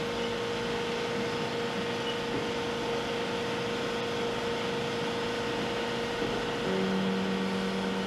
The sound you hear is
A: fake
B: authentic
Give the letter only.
B